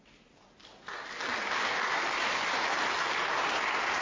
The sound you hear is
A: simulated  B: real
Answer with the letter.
B